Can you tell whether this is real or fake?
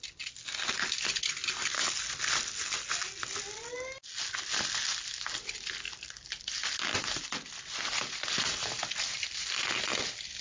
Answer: real